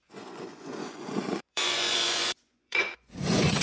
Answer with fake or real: fake